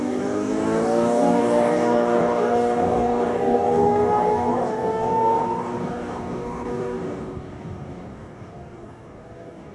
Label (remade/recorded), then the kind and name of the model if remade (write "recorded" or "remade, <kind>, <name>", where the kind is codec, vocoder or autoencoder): remade, codec, DAC